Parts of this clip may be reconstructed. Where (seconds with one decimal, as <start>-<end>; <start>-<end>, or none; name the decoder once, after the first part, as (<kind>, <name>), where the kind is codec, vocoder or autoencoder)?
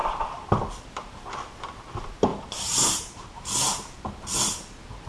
2.3-3.4 (vocoder, BigVGAN v2)